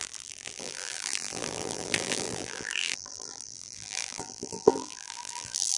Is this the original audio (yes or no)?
no